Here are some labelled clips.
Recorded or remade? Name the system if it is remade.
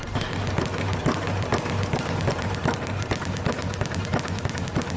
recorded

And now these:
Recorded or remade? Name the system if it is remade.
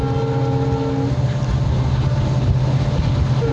recorded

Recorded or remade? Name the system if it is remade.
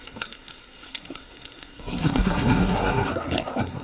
remade, codec, SNAC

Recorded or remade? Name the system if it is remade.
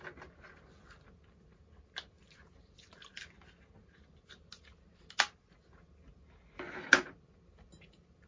recorded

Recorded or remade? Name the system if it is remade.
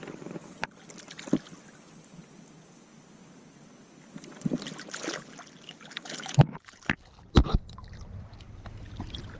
recorded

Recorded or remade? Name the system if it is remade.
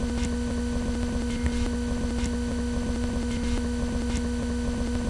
recorded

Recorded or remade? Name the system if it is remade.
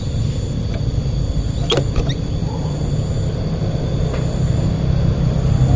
recorded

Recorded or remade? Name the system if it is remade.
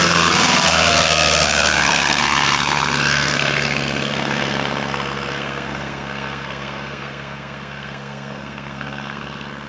remade, codec, SNAC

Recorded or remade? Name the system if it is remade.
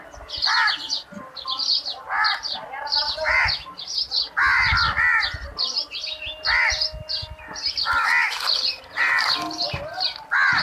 recorded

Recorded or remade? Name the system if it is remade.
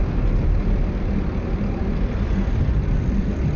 recorded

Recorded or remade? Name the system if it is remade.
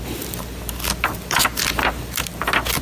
recorded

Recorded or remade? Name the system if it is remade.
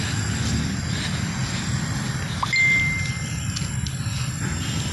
recorded